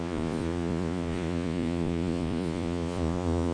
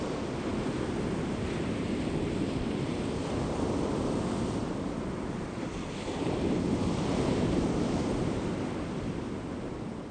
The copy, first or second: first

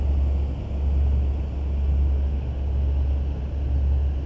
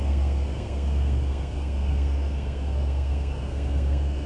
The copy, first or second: second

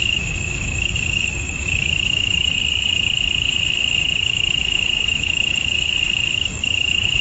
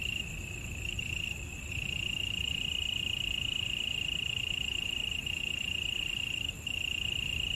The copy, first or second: first